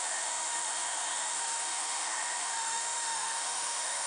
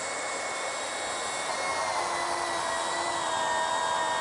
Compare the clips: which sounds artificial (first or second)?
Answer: first